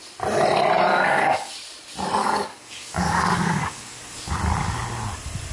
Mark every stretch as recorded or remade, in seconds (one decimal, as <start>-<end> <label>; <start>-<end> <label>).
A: 0.0-0.9 recorded; 0.9-1.5 remade; 1.5-2.2 recorded; 2.2-4.1 remade; 4.1-5.5 recorded